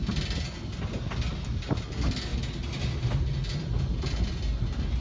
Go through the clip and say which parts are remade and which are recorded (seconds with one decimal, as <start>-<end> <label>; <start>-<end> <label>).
0.0-5.0 recorded